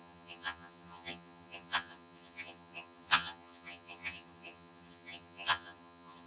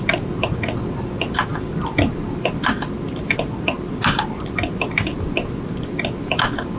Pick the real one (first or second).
second